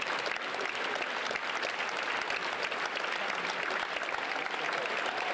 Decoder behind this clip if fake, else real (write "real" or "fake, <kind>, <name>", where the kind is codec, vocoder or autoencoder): real